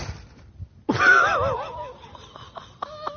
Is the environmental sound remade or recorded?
recorded